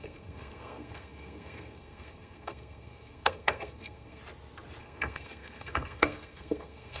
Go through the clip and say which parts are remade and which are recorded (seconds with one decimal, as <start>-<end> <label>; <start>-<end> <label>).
0.0-4.2 remade; 4.2-4.8 recorded; 4.8-7.0 remade